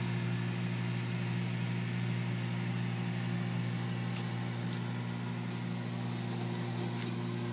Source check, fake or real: real